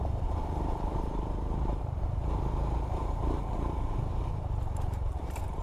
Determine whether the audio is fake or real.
fake